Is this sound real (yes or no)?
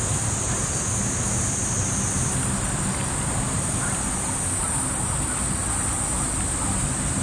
yes